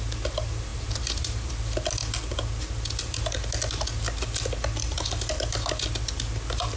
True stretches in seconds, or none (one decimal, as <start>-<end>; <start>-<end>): 0.0-0.7; 1.5-6.8

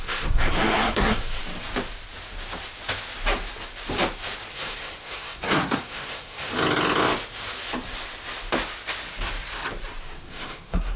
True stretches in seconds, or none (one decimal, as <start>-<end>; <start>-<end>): 1.4-4.5; 6.5-10.0